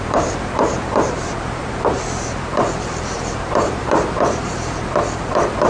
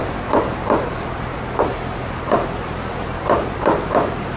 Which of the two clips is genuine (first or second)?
second